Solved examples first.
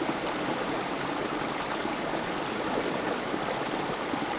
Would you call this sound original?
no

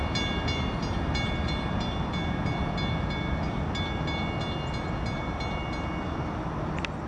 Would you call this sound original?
yes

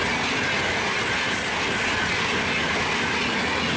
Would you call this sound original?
yes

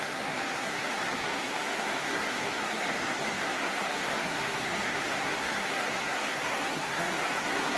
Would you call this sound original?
no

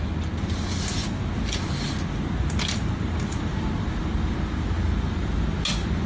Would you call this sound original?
yes